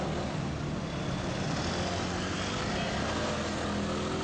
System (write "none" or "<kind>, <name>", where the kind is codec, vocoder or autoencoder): none